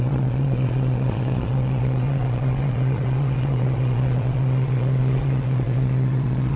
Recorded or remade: remade